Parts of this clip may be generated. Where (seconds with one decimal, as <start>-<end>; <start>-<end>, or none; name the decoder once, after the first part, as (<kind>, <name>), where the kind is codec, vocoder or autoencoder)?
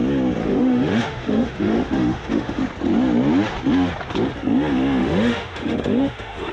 0.4-2.6 (autoencoder, DAC-VAE); 5.0-6.5